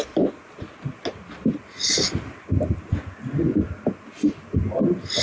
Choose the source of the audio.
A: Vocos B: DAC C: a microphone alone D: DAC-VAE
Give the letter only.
C